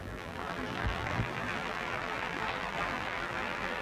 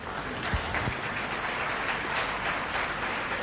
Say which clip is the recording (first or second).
second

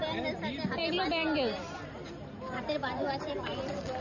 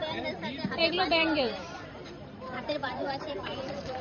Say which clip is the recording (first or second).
first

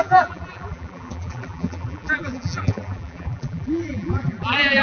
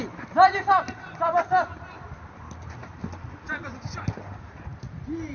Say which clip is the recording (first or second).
second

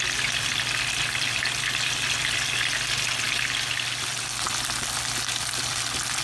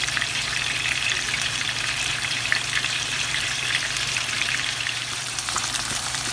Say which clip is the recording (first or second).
first